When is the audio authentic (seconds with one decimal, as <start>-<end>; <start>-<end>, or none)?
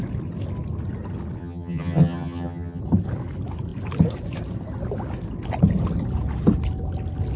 0.0-1.4; 2.8-7.4